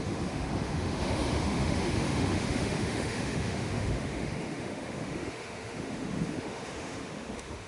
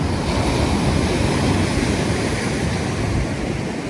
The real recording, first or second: second